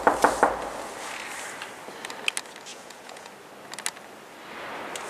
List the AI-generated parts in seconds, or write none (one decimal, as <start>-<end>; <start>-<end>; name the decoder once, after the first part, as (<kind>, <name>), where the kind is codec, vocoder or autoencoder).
2.7-3.3 (vocoder, Vocos)